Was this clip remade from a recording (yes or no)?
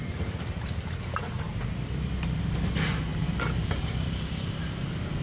yes